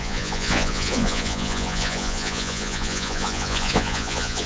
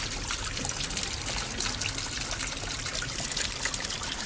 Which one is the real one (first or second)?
second